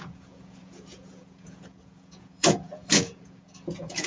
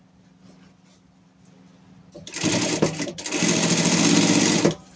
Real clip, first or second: second